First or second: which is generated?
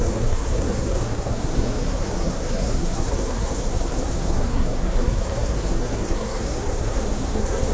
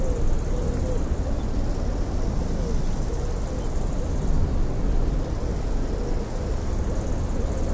first